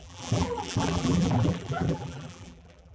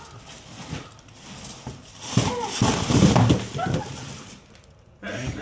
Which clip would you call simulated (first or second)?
first